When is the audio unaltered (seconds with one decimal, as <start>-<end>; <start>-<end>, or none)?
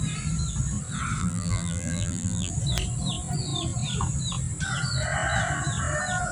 0.0-1.2; 2.5-6.3